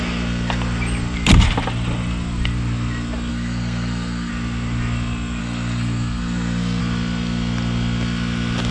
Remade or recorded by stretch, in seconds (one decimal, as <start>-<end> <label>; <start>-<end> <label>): 0.0-3.3 recorded; 3.3-4.3 remade; 4.3-5.4 recorded; 5.4-6.8 remade; 6.8-8.7 recorded